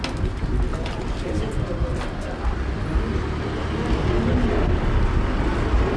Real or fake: real